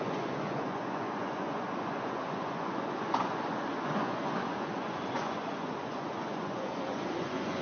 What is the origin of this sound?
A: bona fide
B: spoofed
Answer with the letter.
B